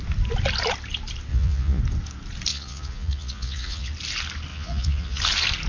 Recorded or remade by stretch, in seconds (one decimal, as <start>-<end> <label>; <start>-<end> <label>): 0.0-1.3 recorded; 1.3-1.8 remade; 1.8-2.5 recorded; 2.5-3.9 remade; 3.9-4.5 recorded; 4.5-5.2 remade; 5.2-5.7 recorded